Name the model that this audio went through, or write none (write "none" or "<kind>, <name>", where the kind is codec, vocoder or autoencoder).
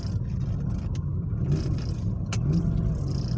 none